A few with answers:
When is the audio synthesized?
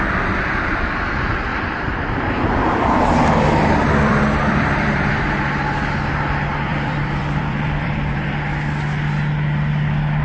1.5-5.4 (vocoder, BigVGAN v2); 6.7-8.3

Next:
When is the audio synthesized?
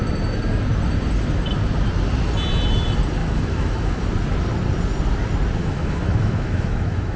3.2-4.0 (autoencoder, DAC-VAE); 5.6-7.2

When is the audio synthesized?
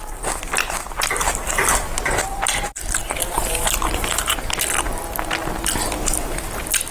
none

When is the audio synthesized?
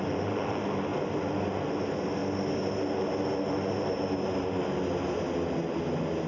none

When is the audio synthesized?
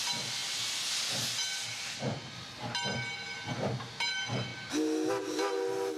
none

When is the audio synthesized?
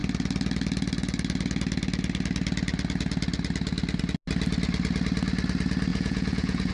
5.9-6.7 (vocoder, Vocos)